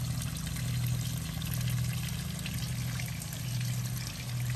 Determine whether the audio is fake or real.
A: real